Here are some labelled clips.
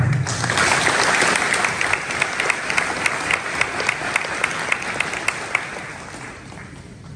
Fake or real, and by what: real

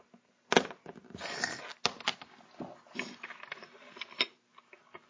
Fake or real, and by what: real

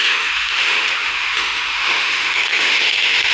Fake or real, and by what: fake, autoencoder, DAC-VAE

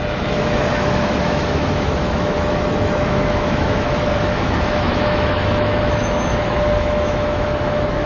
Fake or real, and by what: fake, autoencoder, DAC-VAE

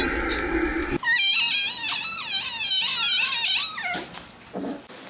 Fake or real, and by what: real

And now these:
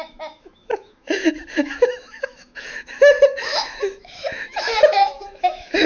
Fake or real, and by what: fake, autoencoder, DAC-VAE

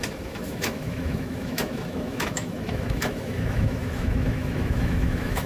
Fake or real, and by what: fake, autoencoder, DAC-VAE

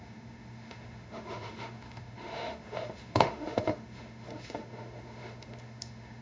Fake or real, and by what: fake, autoencoder, DAC-VAE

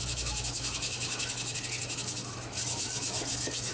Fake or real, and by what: fake, autoencoder, DAC-VAE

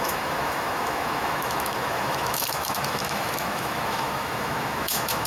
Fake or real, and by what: fake, autoencoder, DAC-VAE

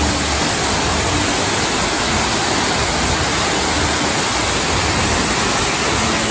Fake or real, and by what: real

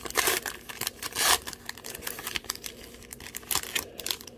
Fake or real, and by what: real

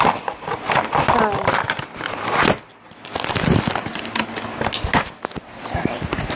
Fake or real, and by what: real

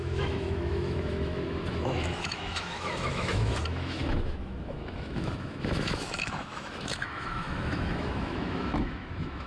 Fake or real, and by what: fake, autoencoder, DAC-VAE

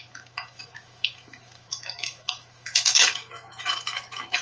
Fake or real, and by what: fake, autoencoder, DAC-VAE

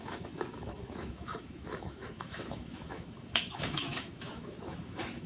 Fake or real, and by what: fake, autoencoder, DAC-VAE